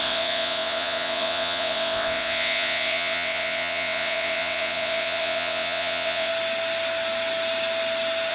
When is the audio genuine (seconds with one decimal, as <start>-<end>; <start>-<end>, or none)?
6.3-8.3